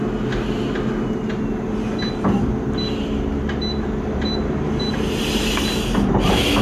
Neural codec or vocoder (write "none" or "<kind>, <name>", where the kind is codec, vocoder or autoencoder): none